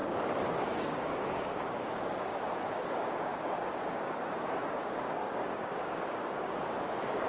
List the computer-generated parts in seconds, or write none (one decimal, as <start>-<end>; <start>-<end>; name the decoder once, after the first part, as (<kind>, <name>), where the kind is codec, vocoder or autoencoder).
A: 0.5-2.3 (codec, DAC); 2.8-7.3